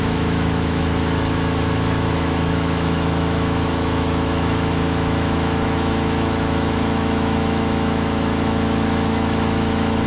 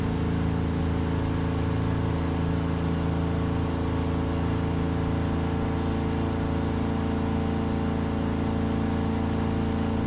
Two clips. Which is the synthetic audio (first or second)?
first